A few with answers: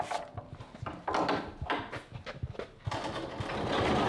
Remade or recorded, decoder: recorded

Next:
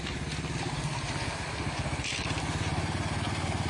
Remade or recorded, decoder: recorded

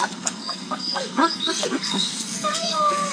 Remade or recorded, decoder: remade, codec, SNAC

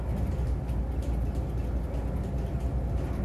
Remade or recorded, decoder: recorded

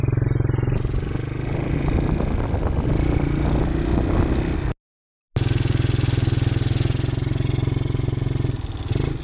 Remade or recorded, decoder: recorded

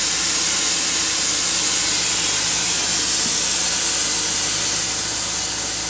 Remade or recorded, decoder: recorded